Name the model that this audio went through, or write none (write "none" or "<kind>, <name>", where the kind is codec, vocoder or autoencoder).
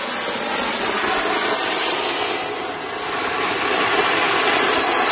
none